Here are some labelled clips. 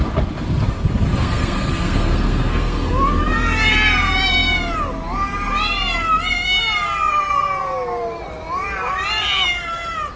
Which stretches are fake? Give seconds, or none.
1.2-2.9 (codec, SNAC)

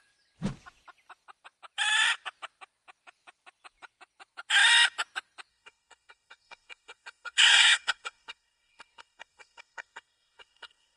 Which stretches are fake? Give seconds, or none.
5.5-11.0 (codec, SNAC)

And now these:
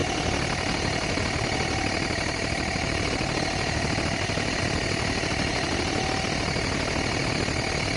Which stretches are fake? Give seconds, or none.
none